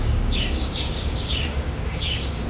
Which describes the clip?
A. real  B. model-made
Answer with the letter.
B